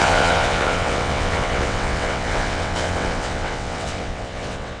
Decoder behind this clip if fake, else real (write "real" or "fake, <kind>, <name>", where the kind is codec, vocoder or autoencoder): fake, vocoder, WaveNeXt